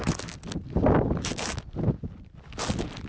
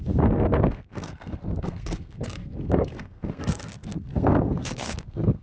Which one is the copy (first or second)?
second